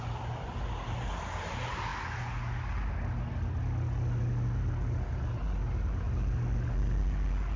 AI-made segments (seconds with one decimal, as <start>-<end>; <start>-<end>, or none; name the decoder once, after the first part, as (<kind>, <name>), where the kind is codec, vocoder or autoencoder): none